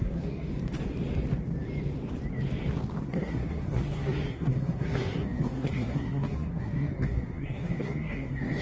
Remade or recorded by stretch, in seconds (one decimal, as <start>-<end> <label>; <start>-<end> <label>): 0.0-0.5 remade; 0.5-3.0 recorded; 3.0-8.6 remade